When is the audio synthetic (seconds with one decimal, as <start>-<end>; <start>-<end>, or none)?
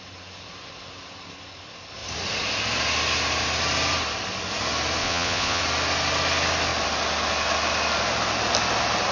5.0-5.6